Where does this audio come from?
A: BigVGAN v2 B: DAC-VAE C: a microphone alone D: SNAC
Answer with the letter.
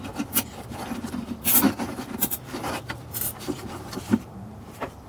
A